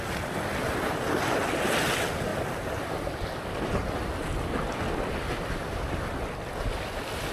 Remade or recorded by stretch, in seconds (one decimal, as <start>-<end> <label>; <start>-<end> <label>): 0.0-7.3 recorded